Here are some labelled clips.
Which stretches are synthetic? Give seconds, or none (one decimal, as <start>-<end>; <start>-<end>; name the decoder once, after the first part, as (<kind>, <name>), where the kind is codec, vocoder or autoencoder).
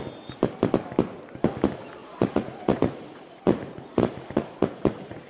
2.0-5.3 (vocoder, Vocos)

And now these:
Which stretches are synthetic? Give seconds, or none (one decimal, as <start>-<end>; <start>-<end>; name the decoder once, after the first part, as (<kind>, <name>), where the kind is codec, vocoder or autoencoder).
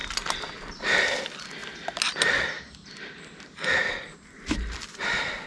none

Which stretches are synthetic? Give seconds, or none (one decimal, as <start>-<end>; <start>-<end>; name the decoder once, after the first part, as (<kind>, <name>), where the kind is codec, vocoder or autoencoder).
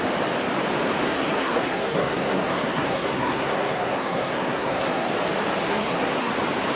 1.0-5.1 (codec, SNAC); 5.6-6.3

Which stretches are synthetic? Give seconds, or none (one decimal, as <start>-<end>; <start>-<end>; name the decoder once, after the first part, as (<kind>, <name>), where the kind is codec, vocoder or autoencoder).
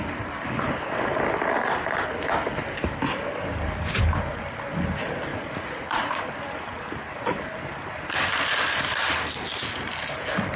5.3-6.3 (vocoder, Vocos)